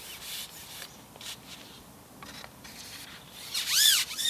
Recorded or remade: remade